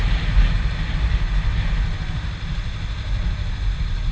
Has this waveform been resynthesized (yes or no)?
no